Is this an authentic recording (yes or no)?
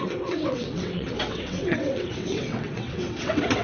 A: no